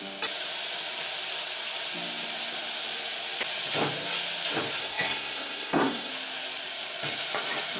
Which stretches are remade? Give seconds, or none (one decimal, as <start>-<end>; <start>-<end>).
4.8-6.1